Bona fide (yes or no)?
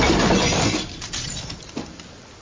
yes